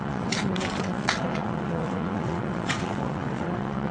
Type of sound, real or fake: fake